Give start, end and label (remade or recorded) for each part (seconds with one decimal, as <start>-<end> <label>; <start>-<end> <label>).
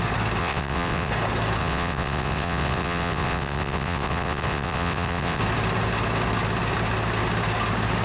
0.0-0.4 recorded; 0.4-1.1 remade; 1.1-1.6 recorded; 1.6-5.4 remade; 5.4-8.0 recorded